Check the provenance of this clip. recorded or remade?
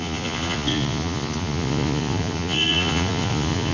remade